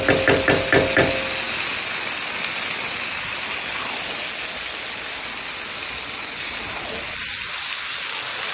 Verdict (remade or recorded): recorded